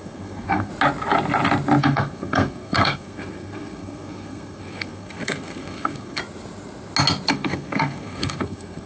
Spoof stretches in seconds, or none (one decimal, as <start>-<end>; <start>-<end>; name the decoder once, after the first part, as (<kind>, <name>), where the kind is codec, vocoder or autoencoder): 0.0-0.7 (codec, SNAC); 1.8-6.2; 7.3-8.9